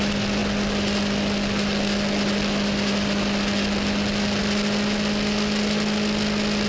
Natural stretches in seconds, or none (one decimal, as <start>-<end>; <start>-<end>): 0.0-6.7